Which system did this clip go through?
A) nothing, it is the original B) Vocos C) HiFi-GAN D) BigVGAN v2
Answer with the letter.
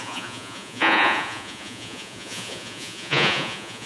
B